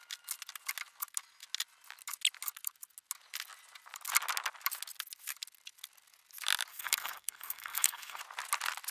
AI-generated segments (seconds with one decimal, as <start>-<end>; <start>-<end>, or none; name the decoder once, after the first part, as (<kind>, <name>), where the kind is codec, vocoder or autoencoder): 6.7-8.2 (codec, SNAC)